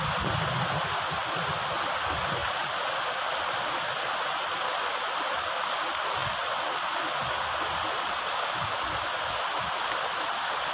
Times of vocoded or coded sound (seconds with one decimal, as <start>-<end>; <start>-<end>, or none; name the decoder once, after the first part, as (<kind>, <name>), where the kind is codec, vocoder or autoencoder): none